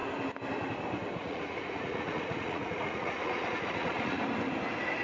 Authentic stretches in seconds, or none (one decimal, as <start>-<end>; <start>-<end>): 0.0-1.2; 4.2-5.0